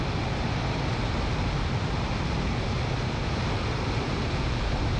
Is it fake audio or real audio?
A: real